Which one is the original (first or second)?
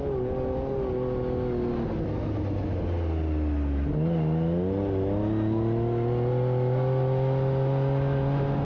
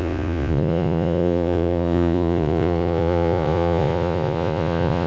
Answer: first